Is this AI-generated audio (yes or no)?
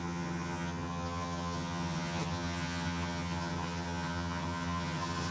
yes